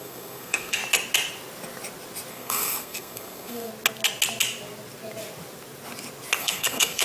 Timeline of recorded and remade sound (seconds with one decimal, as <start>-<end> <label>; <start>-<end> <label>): 0.0-0.8 remade; 0.8-2.3 recorded; 2.3-3.7 remade; 3.7-6.4 recorded; 6.4-7.0 remade